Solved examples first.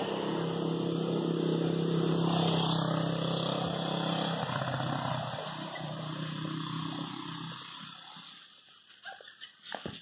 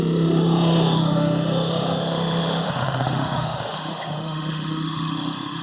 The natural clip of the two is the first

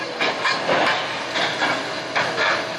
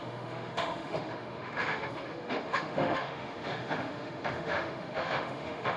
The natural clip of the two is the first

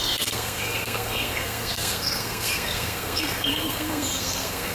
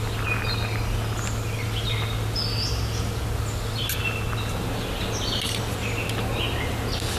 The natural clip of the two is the second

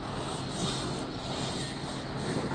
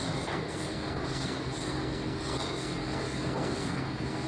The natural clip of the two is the first